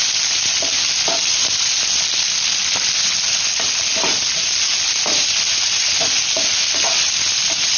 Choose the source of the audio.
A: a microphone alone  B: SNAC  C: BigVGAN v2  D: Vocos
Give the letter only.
A